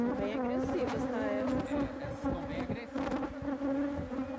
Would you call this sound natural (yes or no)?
yes